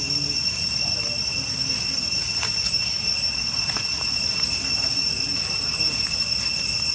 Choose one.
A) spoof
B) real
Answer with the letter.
B